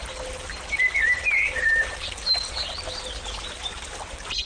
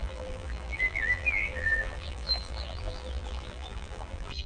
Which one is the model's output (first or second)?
second